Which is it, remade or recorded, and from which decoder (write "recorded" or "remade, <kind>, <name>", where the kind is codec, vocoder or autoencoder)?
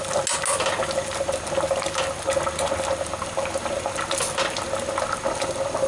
recorded